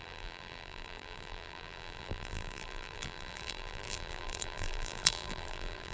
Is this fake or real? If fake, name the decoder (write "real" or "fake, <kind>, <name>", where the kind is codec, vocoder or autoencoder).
fake, vocoder, BigVGAN v2